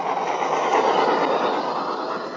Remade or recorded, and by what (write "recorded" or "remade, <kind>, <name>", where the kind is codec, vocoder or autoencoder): recorded